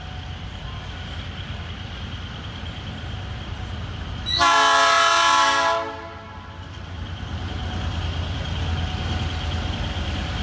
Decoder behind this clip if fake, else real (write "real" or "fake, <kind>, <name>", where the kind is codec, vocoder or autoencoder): real